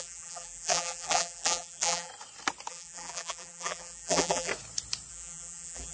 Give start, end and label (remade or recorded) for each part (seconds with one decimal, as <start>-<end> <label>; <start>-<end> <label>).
0.0-2.1 remade; 2.1-2.7 recorded; 2.7-4.5 remade; 4.5-5.1 recorded; 5.1-5.9 remade